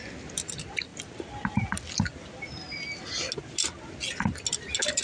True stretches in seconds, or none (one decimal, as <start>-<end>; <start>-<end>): 0.0-5.0

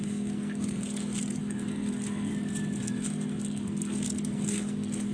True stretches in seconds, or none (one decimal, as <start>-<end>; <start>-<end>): 2.3-2.8

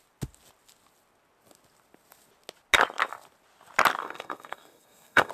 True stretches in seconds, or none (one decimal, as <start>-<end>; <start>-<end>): 0.0-4.0

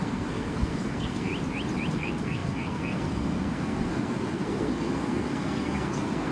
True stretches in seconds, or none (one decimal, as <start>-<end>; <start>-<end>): 1.3-1.9

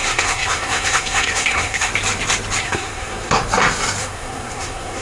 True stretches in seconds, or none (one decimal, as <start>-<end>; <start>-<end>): 1.9-2.6; 3.4-4.0

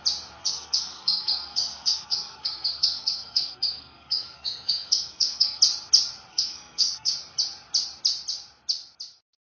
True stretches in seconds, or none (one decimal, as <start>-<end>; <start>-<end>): 0.0-0.4; 5.6-6.3; 7.1-9.4

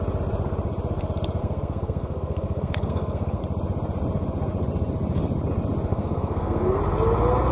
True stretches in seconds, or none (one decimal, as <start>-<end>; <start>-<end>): 0.0-1.4; 3.4-5.9; 6.8-7.5

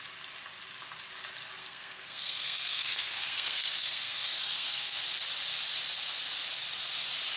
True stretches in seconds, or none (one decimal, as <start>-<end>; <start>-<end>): 0.0-1.6; 5.0-7.4